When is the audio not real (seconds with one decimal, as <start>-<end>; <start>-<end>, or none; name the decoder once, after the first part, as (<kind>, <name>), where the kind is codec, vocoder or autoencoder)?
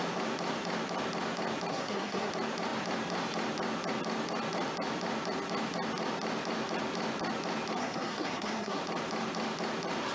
1.7-2.3 (codec, SNAC); 7.8-8.8